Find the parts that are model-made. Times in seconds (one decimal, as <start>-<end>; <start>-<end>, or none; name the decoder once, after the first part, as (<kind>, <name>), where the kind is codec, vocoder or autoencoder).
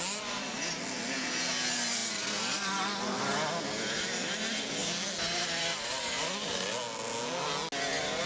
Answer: 2.0-3.2 (vocoder, BigVGAN v2)